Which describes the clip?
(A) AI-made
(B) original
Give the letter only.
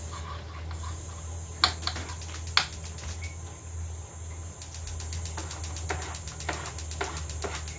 B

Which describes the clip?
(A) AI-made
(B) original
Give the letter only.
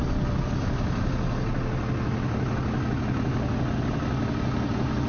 B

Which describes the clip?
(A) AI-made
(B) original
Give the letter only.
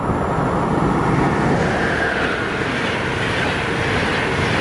B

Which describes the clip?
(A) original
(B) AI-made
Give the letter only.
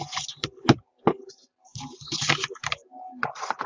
A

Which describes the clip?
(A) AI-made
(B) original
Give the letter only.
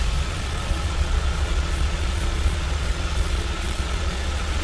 A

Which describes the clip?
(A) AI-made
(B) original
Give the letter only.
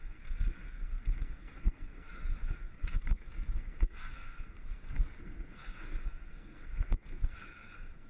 A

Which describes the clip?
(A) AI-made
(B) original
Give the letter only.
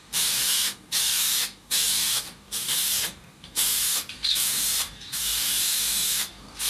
A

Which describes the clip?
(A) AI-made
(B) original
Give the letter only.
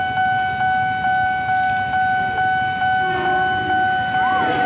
B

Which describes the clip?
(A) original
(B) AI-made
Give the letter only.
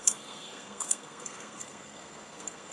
B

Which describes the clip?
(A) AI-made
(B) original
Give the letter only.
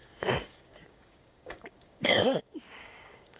A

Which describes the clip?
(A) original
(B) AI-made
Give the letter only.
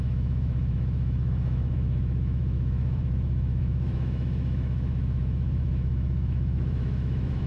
B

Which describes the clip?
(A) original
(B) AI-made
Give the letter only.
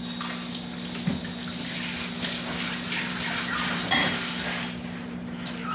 A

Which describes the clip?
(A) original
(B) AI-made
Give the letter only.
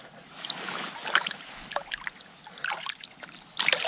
A